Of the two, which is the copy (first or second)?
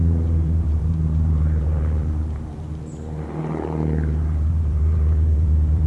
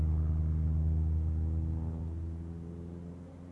first